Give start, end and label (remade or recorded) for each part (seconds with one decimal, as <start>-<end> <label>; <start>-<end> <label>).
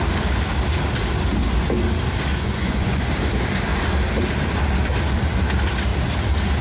0.0-2.3 recorded; 2.3-3.1 remade; 3.1-6.6 recorded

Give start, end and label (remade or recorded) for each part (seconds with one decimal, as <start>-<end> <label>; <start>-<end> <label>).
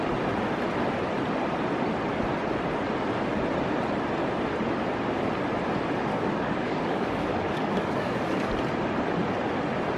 0.0-6.1 recorded; 6.1-8.5 remade; 8.5-10.0 recorded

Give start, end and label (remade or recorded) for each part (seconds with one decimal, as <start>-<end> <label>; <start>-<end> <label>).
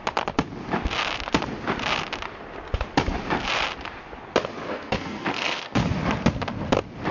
0.0-4.7 recorded; 4.7-5.8 remade; 5.8-7.1 recorded